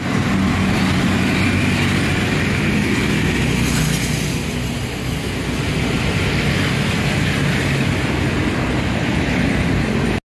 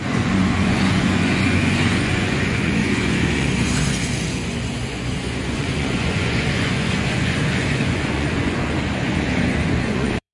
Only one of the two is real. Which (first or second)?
first